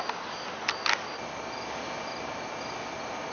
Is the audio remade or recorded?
recorded